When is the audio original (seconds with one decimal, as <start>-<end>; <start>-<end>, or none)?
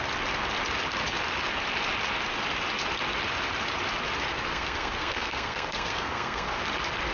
0.0-4.5; 6.6-7.1